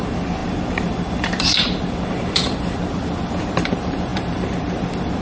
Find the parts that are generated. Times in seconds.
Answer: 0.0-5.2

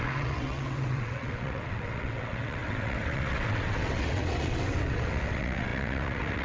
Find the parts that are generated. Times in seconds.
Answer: 0.0-6.4